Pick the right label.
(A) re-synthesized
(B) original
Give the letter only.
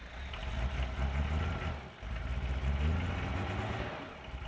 B